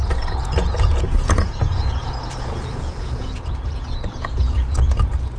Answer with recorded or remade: remade